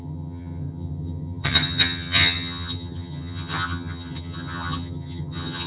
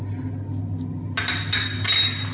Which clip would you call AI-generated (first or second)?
first